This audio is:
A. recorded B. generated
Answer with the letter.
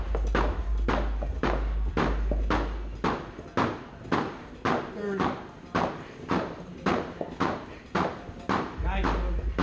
A